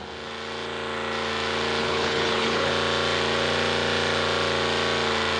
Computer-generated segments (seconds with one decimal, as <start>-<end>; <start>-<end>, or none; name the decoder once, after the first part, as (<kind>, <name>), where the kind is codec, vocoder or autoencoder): 1.8-2.7 (codec, HILCodec)